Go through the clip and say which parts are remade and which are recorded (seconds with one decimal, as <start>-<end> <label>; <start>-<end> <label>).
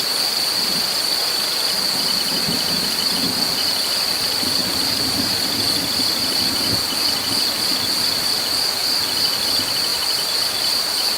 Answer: 0.0-4.6 recorded; 4.6-5.4 remade; 5.4-9.9 recorded; 9.9-10.5 remade; 10.5-11.2 recorded